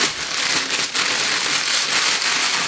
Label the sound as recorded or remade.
recorded